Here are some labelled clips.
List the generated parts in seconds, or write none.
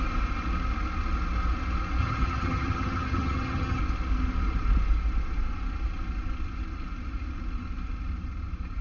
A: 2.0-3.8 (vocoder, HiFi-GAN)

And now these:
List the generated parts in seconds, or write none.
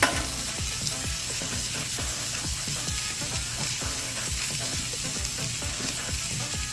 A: 1.2-2.8 (codec, HILCodec); 3.5-4.8; 5.7-6.2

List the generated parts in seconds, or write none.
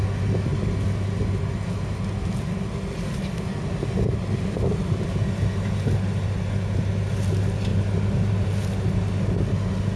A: none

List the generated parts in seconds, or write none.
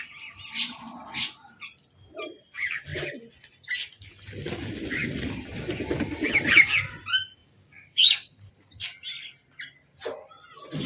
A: 7.4-8.5 (vocoder, BigVGAN v2)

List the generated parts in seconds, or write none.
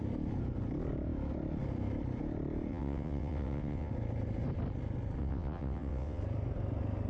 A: 2.7-3.9 (vocoder, WaveNeXt); 5.2-6.2